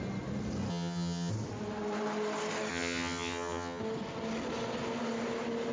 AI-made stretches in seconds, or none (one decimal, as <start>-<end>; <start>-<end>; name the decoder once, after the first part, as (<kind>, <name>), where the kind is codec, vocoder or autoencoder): 0.7-1.3 (vocoder, HiFi-GAN); 2.7-3.8